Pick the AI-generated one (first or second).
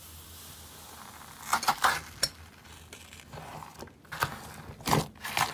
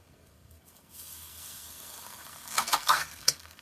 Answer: second